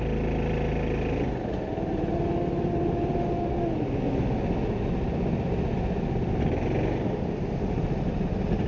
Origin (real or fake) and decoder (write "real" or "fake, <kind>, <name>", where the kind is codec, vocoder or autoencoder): real